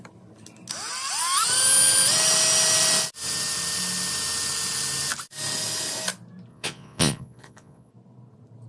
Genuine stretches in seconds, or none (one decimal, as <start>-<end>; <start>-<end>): 0.0-6.5; 7.9-8.7